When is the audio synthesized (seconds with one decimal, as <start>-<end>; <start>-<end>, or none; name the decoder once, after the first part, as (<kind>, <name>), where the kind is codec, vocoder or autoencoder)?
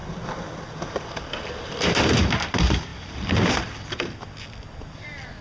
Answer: none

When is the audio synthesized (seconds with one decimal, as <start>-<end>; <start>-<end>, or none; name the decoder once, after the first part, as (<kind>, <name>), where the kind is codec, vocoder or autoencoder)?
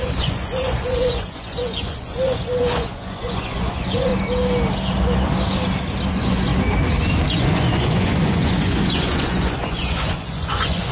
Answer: 0.0-4.1 (vocoder, Vocos); 6.1-6.5; 7.3-10.9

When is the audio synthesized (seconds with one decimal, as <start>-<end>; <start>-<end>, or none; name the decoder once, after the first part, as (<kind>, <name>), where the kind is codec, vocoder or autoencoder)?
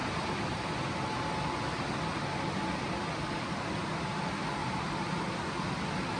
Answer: 4.6-5.2 (vocoder, BigVGAN v2)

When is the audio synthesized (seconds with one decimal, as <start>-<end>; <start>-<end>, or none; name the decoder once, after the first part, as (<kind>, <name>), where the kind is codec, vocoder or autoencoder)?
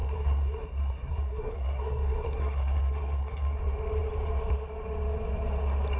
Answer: 0.0-3.6 (codec, SNAC)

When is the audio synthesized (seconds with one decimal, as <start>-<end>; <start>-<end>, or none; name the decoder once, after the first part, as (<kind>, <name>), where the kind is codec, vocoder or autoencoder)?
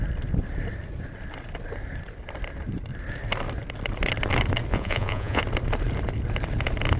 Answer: 4.7-5.4 (vocoder, Vocos)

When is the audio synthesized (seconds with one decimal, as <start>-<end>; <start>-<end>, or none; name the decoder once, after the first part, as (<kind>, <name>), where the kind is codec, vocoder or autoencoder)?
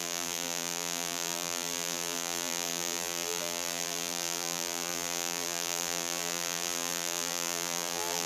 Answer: 0.0-8.3 (vocoder, BigVGAN v2)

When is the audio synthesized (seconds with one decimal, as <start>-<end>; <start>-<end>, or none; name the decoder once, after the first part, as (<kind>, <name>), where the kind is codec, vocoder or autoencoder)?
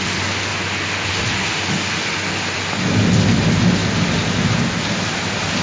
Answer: none